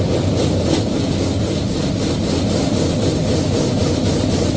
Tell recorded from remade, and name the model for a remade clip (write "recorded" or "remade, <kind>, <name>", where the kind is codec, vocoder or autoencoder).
recorded